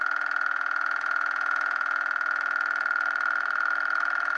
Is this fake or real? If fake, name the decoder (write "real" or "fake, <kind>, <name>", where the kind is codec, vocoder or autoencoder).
real